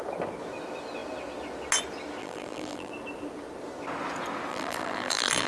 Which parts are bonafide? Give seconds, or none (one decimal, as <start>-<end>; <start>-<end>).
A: 0.0-2.2; 2.9-4.5